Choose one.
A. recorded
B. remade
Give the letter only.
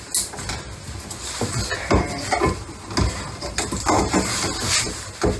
A